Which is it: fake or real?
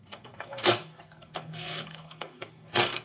fake